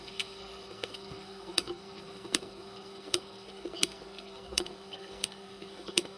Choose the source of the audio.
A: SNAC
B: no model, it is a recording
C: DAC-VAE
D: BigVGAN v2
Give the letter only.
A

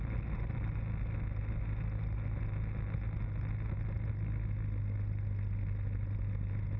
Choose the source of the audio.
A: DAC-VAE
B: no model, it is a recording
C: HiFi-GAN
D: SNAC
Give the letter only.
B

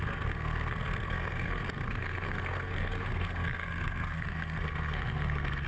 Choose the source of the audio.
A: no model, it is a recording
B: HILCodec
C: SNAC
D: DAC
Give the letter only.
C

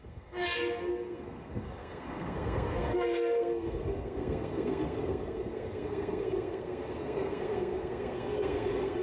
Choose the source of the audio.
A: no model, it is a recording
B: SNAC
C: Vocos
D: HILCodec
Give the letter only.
B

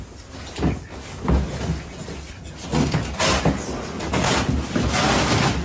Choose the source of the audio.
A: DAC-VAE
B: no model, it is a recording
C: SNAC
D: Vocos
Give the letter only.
B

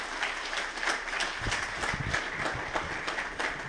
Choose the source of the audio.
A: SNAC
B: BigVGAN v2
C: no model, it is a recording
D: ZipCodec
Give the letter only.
C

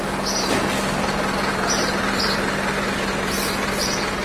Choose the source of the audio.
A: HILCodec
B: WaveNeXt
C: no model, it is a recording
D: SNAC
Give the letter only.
C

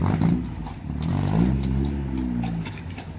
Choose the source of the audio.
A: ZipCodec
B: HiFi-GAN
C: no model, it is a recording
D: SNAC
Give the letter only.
C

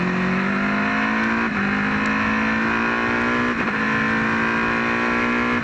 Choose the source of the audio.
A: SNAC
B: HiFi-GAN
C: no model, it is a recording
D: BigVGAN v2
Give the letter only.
C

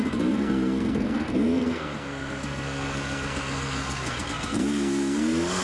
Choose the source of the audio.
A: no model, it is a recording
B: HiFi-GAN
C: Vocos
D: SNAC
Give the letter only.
D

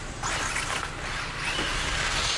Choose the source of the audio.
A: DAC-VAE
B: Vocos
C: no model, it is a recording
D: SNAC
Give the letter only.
C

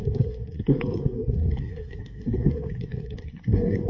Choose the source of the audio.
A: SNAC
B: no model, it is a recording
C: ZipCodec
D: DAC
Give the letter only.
A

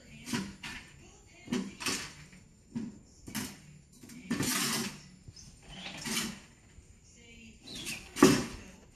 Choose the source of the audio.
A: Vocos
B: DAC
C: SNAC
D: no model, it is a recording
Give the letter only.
D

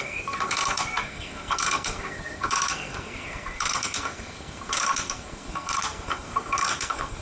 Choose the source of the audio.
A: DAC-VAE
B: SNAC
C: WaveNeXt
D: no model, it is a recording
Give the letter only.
B